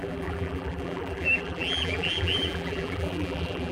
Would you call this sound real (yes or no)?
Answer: no